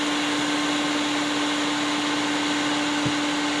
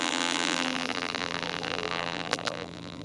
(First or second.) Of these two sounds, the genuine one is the first